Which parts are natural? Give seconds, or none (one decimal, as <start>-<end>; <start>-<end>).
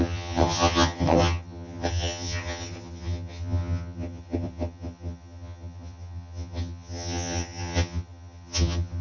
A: none